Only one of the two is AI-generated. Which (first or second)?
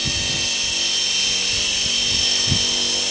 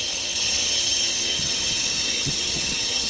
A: second